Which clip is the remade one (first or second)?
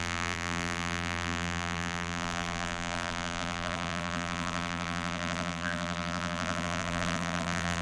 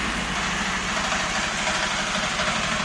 first